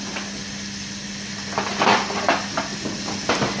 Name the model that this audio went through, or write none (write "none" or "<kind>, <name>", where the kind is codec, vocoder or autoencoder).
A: none